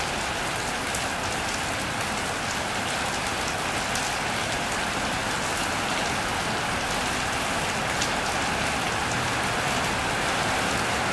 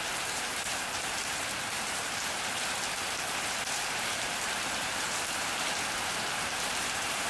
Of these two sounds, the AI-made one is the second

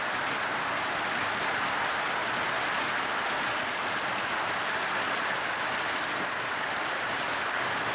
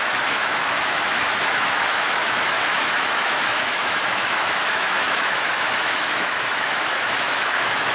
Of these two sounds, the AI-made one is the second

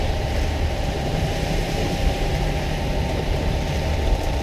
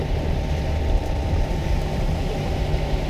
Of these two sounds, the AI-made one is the first